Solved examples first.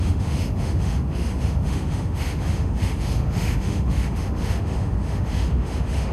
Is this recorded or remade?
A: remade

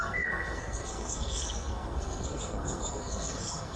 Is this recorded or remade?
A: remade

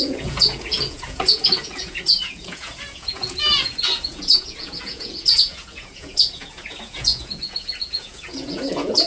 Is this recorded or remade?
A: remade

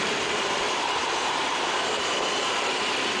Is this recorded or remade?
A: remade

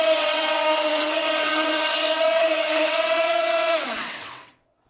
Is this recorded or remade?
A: remade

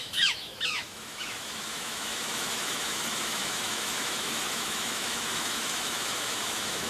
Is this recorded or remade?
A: remade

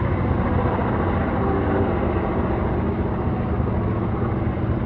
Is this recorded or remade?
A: recorded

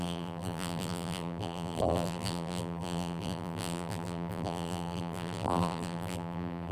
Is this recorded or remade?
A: remade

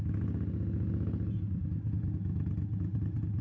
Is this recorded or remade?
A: recorded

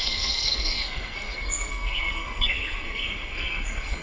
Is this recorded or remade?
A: remade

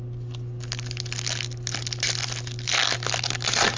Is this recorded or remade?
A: recorded